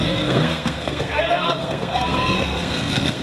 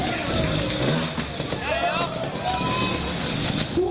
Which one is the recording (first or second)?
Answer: second